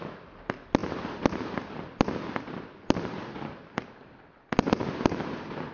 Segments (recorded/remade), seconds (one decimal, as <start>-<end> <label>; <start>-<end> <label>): 0.0-5.7 recorded